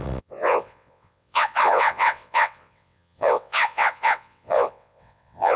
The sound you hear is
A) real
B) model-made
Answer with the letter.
B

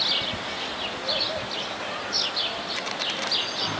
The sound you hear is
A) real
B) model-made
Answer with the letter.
A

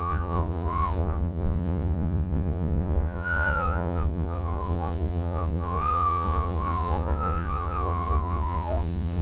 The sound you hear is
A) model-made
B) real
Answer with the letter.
A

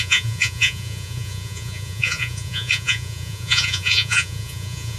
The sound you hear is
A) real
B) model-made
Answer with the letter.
B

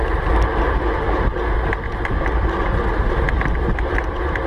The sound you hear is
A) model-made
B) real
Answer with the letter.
B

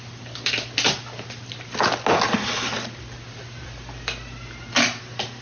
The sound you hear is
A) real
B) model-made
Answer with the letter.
A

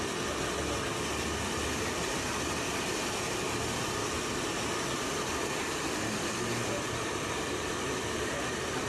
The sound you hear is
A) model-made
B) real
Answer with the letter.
A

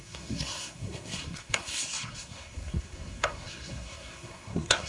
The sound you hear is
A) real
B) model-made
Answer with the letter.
B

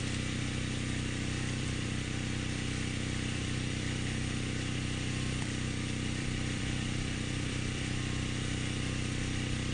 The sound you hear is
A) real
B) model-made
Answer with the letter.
B